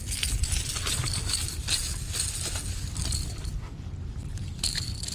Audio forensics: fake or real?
real